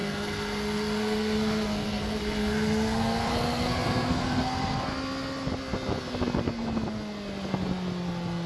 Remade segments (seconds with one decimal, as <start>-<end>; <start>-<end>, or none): 0.0-4.9